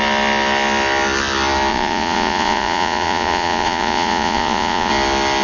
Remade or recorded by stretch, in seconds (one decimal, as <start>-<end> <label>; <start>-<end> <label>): 0.0-1.7 recorded; 1.7-4.9 remade; 4.9-5.4 recorded